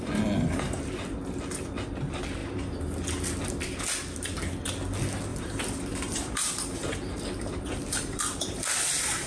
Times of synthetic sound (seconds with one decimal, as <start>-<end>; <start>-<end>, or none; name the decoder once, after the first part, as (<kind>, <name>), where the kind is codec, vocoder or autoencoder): 5.3-9.3 (vocoder, BigVGAN v2)